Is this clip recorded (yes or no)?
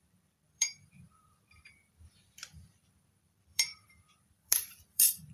no